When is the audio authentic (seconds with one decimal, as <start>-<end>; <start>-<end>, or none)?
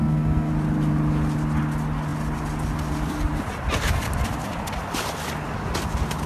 0.5-6.3